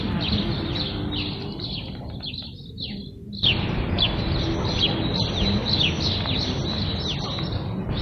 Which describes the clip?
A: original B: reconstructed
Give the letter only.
A